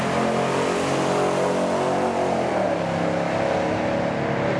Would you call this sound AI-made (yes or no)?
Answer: no